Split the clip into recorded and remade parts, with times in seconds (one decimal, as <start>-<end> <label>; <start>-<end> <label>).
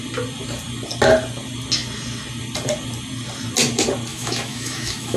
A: 0.0-4.1 recorded; 4.1-5.2 remade